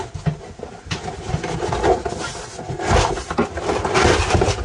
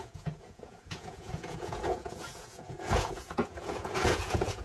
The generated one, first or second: second